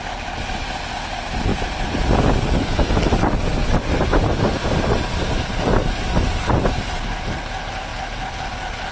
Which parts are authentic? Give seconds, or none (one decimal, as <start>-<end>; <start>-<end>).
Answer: 0.0-1.5; 2.3-3.6; 5.4-7.9; 8.4-8.9